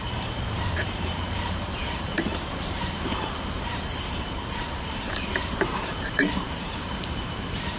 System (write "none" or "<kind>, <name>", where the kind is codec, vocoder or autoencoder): vocoder, BigVGAN v2